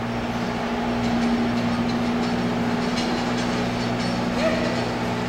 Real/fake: real